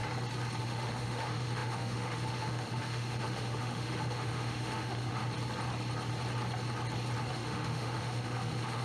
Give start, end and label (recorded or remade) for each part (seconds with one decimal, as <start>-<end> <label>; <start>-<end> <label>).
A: 0.0-0.6 recorded; 0.6-5.2 remade; 5.2-7.3 recorded; 7.3-8.8 remade